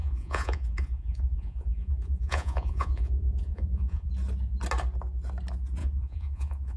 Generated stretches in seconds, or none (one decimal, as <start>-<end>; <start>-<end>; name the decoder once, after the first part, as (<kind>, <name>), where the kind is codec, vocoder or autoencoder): 0.0-4.1 (vocoder, Vocos); 5.8-6.8